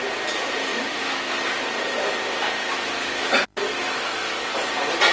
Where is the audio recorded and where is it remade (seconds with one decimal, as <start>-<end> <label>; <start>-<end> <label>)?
0.0-0.7 recorded; 0.7-1.3 remade; 1.3-2.6 recorded; 2.6-3.3 remade; 3.3-3.8 recorded; 3.8-4.4 remade; 4.4-5.1 recorded